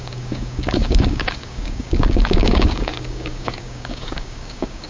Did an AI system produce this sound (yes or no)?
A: yes